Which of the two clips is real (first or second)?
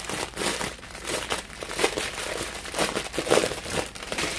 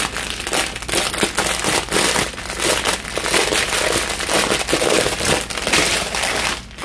second